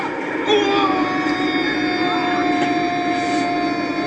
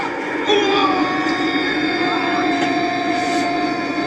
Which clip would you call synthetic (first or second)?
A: second